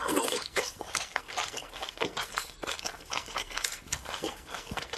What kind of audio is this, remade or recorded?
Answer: remade